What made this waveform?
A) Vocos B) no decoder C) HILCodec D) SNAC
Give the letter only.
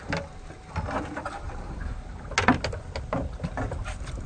B